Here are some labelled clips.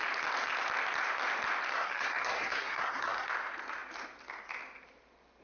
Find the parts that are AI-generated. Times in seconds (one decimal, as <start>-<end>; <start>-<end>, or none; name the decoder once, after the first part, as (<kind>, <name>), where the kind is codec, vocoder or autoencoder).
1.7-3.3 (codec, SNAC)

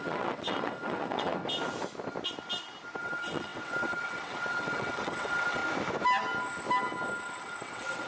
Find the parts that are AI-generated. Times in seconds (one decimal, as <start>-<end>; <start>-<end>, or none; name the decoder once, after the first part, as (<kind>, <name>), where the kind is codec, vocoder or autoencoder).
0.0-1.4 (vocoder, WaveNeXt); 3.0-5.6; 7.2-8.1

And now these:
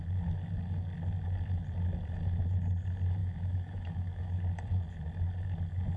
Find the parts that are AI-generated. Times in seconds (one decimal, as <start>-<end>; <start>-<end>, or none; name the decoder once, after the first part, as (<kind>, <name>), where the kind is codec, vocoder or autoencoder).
3.2-4.4 (autoencoder, DAC-VAE)

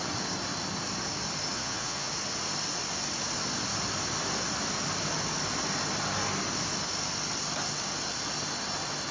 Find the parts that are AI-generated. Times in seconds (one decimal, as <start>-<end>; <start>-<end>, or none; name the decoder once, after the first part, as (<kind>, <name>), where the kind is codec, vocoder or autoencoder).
1.5-2.1 (vocoder, Vocos)

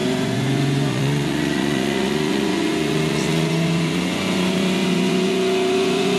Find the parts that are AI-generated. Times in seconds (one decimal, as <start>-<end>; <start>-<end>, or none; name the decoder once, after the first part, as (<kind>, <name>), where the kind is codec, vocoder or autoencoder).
0.0-6.2 (vocoder, Vocos)

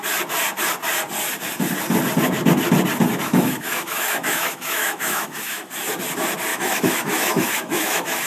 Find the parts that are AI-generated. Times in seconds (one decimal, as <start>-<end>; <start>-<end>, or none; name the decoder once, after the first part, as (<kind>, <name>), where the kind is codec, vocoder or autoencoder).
3.2-5.7 (autoencoder, DAC-VAE); 6.5-8.3

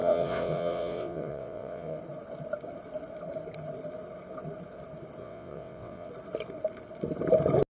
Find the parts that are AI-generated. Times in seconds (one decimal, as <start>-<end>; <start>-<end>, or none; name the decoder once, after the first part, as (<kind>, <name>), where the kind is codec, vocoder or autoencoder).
0.0-2.0 (vocoder, WaveNeXt); 5.2-6.1

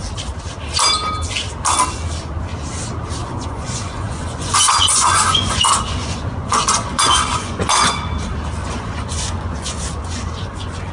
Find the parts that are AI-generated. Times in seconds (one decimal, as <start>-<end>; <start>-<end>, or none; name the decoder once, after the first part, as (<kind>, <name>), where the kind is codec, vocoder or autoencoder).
3.2-8.1 (vocoder, Vocos); 8.6-10.9